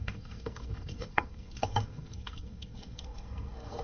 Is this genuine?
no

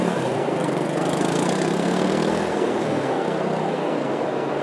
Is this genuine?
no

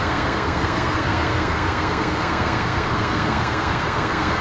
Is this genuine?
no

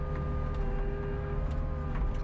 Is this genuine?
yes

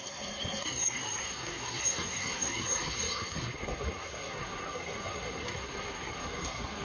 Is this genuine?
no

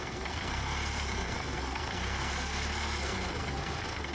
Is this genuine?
no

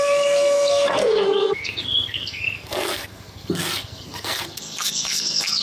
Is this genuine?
no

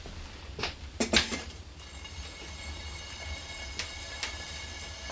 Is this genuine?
yes